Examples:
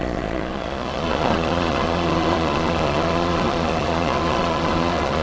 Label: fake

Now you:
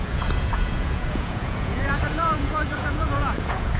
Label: fake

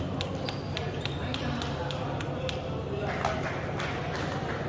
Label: real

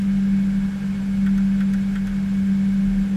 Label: real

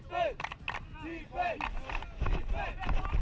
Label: real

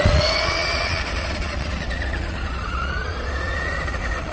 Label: fake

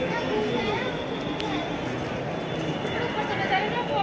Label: real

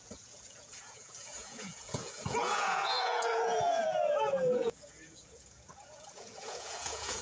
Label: fake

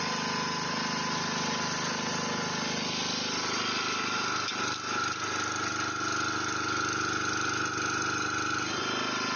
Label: real